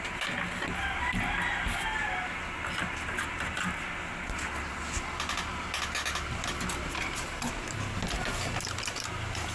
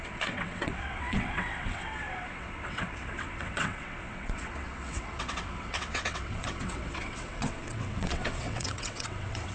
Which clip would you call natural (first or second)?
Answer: first